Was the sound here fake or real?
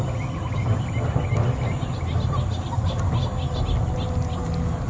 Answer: real